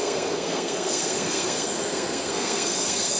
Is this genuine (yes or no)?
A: no